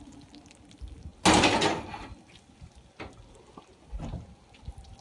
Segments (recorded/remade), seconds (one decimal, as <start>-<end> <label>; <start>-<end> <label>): 0.0-5.0 recorded